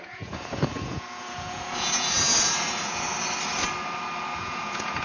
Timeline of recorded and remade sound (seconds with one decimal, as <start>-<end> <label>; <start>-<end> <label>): 0.0-3.1 remade; 3.1-4.4 recorded; 4.4-5.0 remade

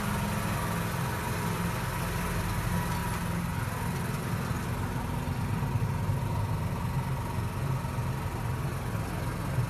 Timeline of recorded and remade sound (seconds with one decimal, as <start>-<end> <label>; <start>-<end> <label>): 0.0-9.7 recorded

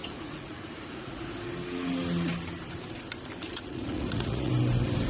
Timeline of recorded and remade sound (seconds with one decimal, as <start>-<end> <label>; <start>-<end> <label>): 0.0-1.2 remade; 1.2-3.5 recorded; 3.5-4.5 remade; 4.5-5.1 recorded

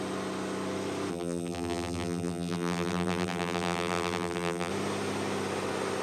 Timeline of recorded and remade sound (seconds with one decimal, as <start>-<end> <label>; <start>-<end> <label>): 0.0-1.1 recorded; 1.1-4.7 remade; 4.7-6.0 recorded

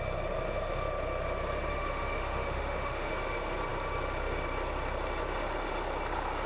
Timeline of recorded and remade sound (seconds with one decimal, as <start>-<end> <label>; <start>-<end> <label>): 0.0-1.7 recorded; 1.7-3.1 remade; 3.1-6.5 recorded

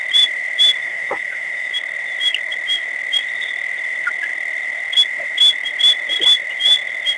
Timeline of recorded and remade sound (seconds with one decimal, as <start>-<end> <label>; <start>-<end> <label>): 0.0-0.8 recorded; 0.8-1.7 remade; 1.7-7.2 recorded

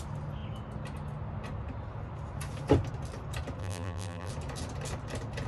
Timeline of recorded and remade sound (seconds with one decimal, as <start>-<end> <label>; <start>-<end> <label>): 0.0-3.6 recorded; 3.6-4.3 remade; 4.3-5.5 recorded